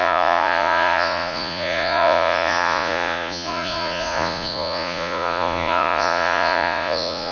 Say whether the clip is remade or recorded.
remade